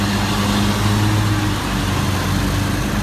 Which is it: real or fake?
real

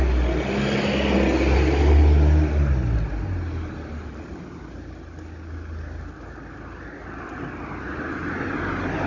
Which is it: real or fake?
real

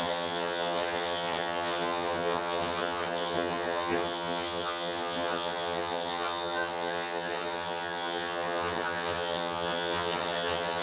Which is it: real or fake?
fake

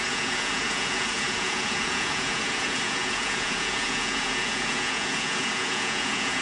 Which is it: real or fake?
fake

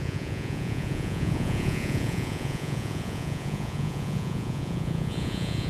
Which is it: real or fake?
fake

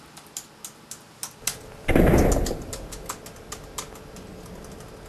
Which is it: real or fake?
real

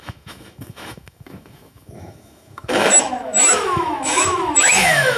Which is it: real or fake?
fake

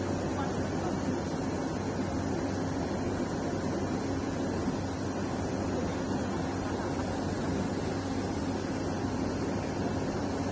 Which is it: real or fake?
real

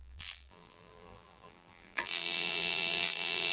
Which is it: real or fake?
fake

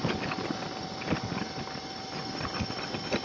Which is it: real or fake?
real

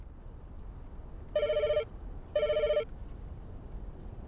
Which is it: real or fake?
fake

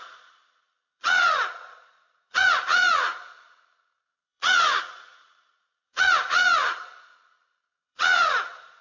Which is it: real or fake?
fake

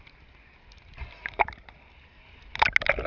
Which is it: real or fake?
real